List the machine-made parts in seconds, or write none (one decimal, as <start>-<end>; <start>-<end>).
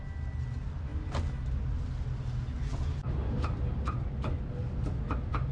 none